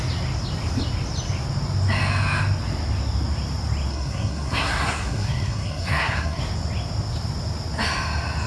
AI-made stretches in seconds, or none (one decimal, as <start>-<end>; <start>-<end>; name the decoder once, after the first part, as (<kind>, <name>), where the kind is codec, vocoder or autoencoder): 3.9-6.4 (codec, SNAC)